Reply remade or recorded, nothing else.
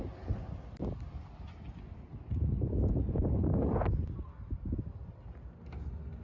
recorded